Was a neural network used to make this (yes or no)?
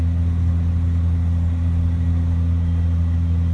no